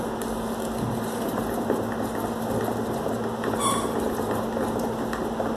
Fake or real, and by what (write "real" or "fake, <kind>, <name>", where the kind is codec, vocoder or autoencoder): real